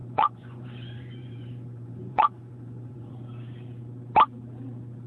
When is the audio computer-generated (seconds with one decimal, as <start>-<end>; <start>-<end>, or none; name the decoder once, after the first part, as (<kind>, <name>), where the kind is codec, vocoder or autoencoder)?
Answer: 0.0-3.1 (vocoder, Vocos)